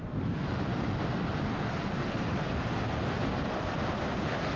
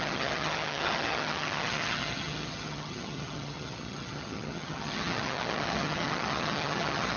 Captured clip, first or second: first